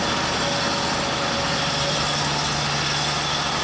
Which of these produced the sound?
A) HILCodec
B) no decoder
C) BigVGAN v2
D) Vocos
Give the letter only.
B